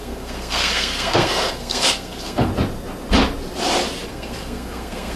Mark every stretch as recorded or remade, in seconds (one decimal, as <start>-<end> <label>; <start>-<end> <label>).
0.0-2.5 remade; 2.5-4.1 recorded; 4.1-5.2 remade